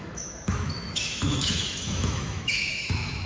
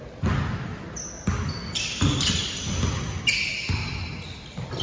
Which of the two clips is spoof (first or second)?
first